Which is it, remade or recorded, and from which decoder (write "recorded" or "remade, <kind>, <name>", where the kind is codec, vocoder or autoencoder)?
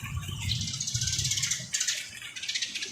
recorded